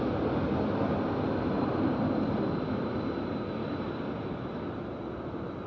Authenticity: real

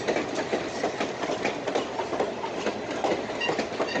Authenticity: real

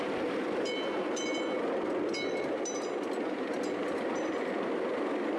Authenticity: real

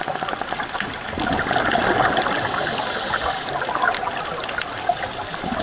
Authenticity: real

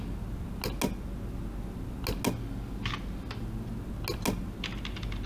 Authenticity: real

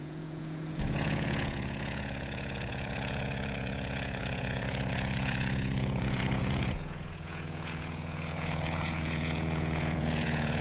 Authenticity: fake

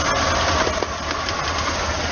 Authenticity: real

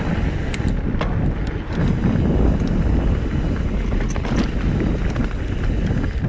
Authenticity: real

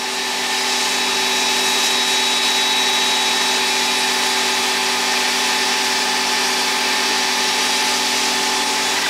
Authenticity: real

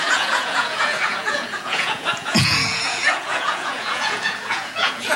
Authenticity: fake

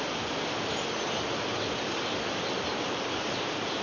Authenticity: real